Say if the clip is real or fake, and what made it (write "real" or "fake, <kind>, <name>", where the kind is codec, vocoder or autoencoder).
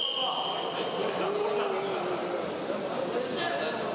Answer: real